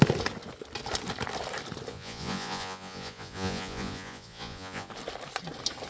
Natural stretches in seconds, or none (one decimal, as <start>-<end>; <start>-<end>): 0.0-1.9; 4.9-5.9